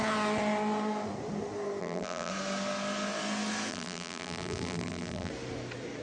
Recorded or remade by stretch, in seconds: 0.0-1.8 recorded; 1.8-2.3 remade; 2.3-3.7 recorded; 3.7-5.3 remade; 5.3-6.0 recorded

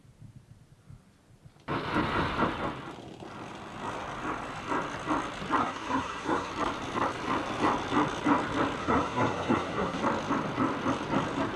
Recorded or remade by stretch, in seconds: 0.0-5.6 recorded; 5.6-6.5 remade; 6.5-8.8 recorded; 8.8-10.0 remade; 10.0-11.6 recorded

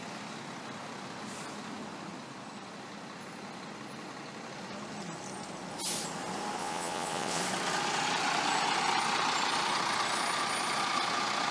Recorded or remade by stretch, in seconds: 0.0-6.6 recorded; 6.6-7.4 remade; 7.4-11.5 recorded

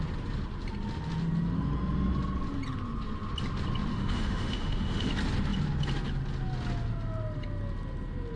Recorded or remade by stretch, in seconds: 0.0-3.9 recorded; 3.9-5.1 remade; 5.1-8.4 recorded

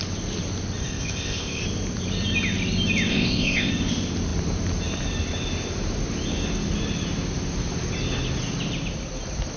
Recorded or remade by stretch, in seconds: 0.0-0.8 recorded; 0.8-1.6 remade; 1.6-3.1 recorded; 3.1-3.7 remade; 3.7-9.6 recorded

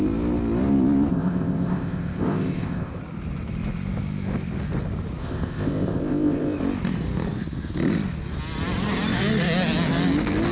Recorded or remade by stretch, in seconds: 0.0-1.1 recorded; 1.1-3.0 remade; 3.0-5.2 recorded; 5.2-6.6 remade; 6.6-10.5 recorded

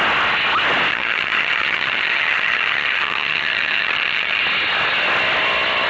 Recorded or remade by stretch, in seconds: 0.0-0.9 recorded; 0.9-4.4 remade; 4.4-5.9 recorded